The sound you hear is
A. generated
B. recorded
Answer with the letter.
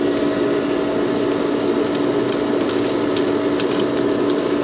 B